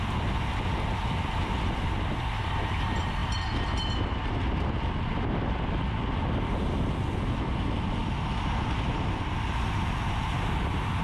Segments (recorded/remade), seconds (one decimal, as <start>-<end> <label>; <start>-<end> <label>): 0.0-11.0 recorded